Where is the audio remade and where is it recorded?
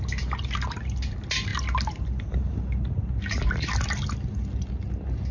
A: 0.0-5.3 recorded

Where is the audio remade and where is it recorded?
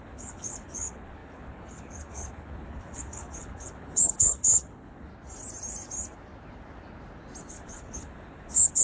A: 0.0-5.1 remade; 5.1-7.5 recorded; 7.5-8.8 remade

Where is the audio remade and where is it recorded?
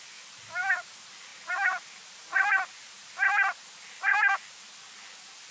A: 0.0-5.5 recorded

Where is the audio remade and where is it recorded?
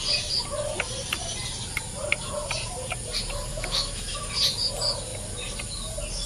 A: 0.0-3.5 recorded; 3.5-4.3 remade; 4.3-6.3 recorded